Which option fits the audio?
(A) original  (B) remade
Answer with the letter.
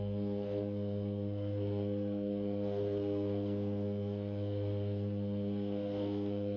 B